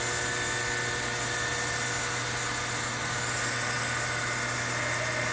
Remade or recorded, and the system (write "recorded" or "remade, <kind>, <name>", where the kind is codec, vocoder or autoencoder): recorded